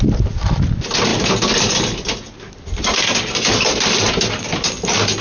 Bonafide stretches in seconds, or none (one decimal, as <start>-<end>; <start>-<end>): 0.0-5.2